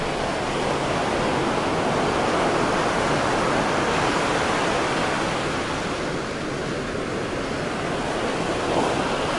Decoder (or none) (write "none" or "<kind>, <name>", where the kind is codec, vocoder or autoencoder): none